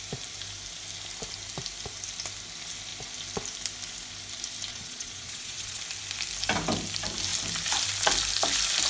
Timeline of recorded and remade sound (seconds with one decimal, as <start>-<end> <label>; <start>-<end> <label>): 0.0-4.7 recorded; 4.7-5.8 remade; 5.8-8.9 recorded